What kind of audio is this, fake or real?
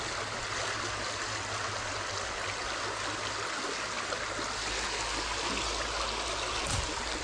real